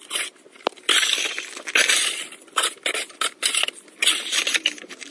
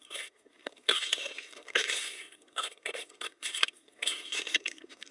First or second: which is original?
first